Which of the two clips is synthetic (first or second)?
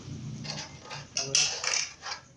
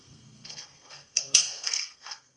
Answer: second